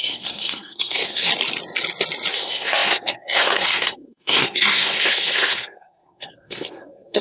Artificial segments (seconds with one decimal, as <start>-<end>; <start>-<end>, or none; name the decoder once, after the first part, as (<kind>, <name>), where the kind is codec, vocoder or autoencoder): 0.0-1.3 (codec, SNAC); 2.3-7.2

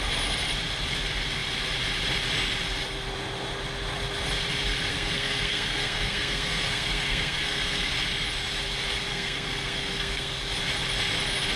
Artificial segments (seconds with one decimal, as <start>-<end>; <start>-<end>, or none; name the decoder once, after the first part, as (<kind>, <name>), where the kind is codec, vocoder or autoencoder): 4.9-7.9 (codec, SNAC); 9.1-10.4